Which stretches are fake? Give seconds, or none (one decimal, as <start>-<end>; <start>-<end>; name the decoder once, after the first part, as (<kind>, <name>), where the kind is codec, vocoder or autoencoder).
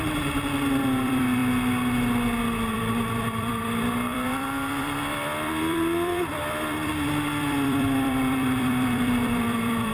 0.0-1.4 (vocoder, BigVGAN v2); 2.7-9.9